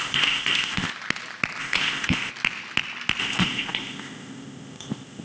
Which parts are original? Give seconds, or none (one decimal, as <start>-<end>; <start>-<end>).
0.9-1.6; 2.3-3.2